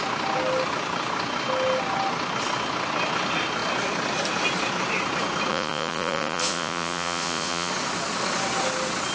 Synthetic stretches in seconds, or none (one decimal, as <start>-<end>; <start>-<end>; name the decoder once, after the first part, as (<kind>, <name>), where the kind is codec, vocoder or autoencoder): 5.5-7.7 (vocoder, Vocos)